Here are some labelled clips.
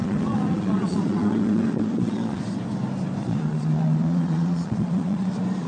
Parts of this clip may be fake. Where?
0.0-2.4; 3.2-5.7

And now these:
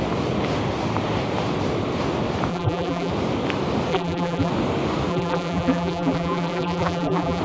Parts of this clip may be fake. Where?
2.5-3.1; 3.9-4.5; 5.1-7.4

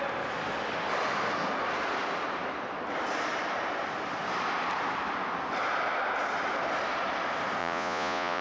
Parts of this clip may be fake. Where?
7.6-8.4